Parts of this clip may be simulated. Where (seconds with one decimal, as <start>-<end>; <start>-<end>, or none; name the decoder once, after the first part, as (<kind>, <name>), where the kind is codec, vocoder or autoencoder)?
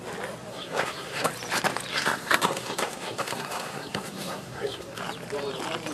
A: 0.5-1.3 (codec, SNAC); 1.9-5.0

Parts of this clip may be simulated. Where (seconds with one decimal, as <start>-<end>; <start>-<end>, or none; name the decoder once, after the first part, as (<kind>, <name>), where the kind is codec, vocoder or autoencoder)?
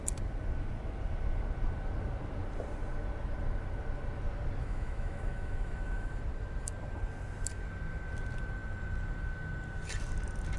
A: 4.6-6.2 (autoencoder, DAC-VAE)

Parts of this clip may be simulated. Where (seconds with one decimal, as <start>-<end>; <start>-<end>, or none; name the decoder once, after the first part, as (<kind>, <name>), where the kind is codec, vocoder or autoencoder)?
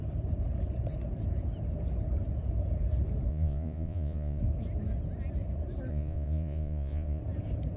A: 3.3-4.4 (vocoder, Vocos); 5.9-7.2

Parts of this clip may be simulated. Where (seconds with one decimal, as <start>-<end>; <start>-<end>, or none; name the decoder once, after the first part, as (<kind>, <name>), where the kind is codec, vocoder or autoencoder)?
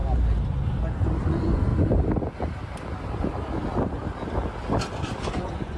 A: 1.2-1.7 (vocoder, Vocos); 5.2-5.8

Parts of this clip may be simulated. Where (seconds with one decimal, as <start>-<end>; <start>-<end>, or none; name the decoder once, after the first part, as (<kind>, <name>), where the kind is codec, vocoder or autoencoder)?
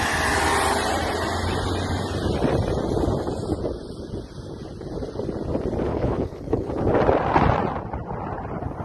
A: 5.9-6.7 (codec, HILCodec)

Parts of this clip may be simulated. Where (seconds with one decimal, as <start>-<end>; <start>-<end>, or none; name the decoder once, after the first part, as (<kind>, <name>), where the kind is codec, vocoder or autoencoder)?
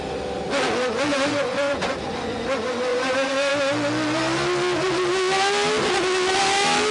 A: 1.1-2.4 (vocoder, Vocos); 2.9-3.5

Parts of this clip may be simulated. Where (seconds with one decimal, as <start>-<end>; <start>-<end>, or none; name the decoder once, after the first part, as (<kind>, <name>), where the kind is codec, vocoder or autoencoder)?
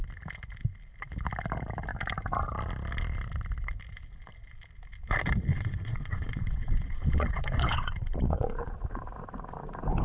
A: 5.5-9.0 (vocoder, Vocos)